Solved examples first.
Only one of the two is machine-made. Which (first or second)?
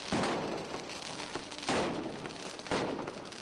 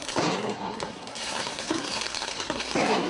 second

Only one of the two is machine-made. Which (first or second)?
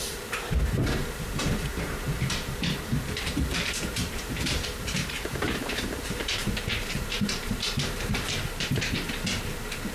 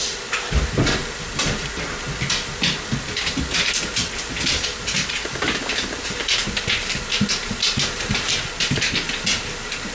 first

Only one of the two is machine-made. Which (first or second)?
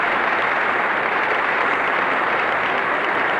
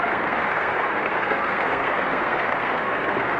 second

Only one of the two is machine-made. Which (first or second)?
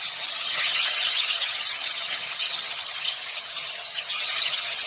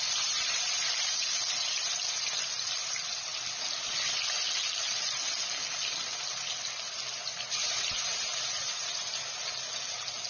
first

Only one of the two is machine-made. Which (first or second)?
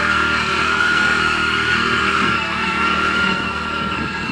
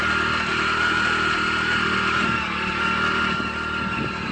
first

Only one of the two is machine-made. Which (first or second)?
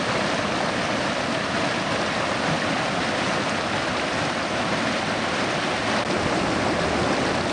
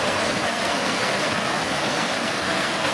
second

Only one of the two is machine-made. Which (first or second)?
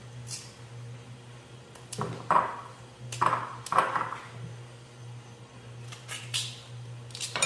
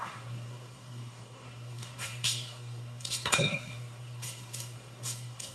second